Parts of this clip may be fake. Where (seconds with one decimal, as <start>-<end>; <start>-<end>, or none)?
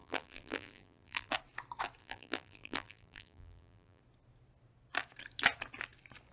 0.0-1.3; 2.0-4.0